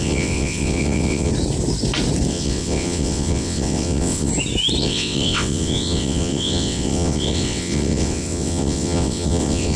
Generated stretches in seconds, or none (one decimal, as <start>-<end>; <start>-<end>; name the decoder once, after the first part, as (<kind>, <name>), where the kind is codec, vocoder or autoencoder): 0.0-1.3 (vocoder, WaveNeXt); 2.3-4.3; 4.8-9.8